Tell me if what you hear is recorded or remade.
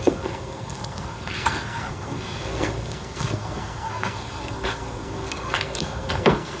remade